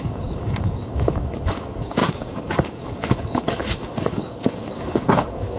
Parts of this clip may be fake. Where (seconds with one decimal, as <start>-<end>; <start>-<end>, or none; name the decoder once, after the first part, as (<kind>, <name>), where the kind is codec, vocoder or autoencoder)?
0.0-5.6 (codec, DAC)